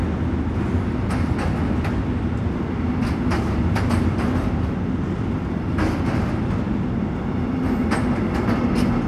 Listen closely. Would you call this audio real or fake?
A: real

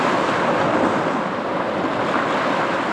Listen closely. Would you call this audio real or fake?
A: real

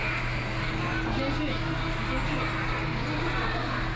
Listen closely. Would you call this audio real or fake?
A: real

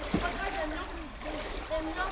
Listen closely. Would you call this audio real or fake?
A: real